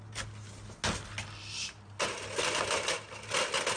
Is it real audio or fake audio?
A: real